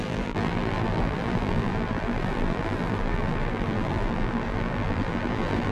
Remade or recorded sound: remade